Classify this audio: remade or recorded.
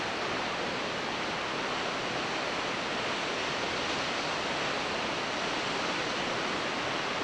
recorded